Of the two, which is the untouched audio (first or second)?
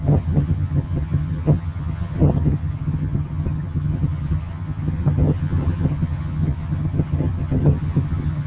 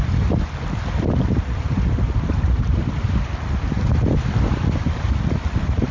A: second